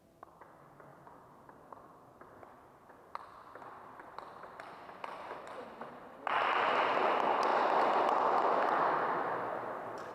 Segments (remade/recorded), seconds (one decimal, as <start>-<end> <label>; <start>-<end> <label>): 0.0-10.1 recorded